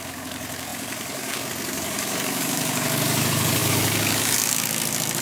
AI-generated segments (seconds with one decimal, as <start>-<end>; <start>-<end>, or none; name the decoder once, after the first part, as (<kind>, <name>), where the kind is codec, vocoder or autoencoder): 0.0-5.2 (codec, DAC)